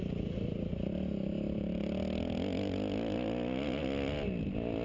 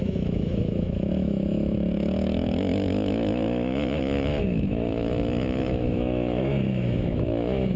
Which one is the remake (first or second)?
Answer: second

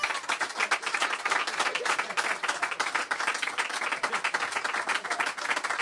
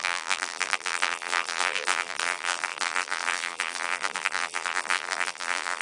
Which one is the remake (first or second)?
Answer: second